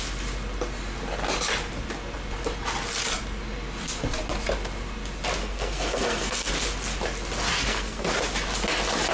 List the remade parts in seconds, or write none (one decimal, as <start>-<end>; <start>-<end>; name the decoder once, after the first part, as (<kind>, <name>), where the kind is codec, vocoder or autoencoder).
5.4-6.5 (codec, SNAC); 7.6-8.1